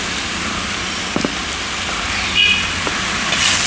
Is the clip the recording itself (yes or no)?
yes